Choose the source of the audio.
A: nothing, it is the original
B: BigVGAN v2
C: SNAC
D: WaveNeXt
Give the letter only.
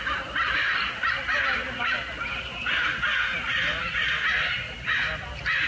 A